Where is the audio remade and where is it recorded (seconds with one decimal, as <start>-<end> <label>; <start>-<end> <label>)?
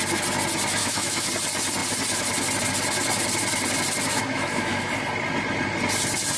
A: 0.0-0.8 recorded; 0.8-1.3 remade; 1.3-4.1 recorded; 4.1-4.9 remade; 4.9-6.4 recorded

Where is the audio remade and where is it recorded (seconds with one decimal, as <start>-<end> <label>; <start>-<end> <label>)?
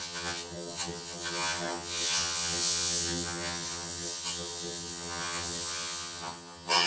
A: 0.0-6.9 remade